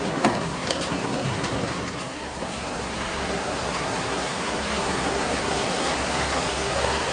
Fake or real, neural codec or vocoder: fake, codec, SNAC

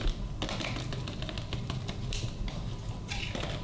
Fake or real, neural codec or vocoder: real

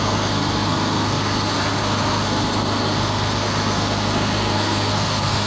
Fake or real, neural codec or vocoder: fake, codec, SNAC